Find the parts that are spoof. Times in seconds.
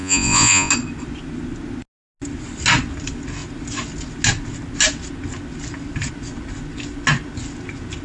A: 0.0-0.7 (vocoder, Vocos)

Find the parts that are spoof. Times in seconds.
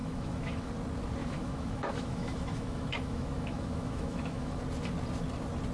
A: 0.0-0.7 (autoencoder, DAC-VAE); 1.2-4.6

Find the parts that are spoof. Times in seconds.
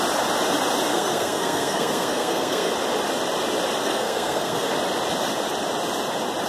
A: 0.9-2.7 (codec, SNAC); 3.8-4.7